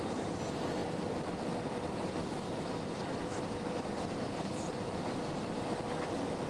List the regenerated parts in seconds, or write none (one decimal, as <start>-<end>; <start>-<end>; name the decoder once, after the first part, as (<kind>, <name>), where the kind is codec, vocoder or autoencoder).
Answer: 0.8-1.4 (vocoder, BigVGAN v2); 2.2-5.1